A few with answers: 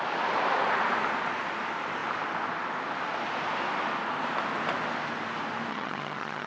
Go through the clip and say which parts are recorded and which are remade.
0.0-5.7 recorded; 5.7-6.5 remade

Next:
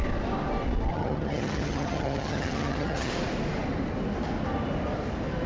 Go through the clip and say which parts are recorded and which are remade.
0.0-0.9 recorded; 0.9-3.1 remade; 3.1-5.5 recorded

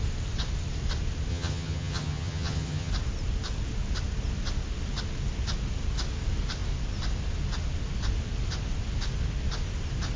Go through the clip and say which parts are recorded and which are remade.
0.0-1.3 recorded; 1.3-2.9 remade; 2.9-10.2 recorded